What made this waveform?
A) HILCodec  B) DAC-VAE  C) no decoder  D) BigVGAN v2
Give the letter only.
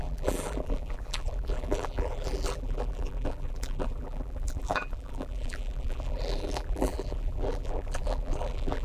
D